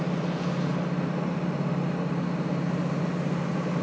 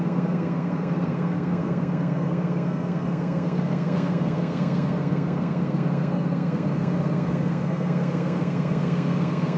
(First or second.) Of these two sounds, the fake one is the second